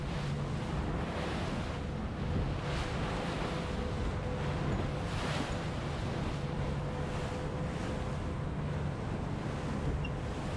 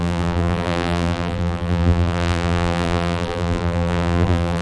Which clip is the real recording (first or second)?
first